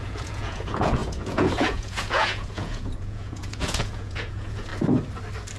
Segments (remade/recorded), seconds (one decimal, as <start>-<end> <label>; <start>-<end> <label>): 0.0-4.7 remade; 4.7-5.6 recorded